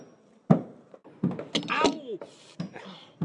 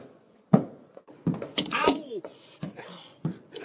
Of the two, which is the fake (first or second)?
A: second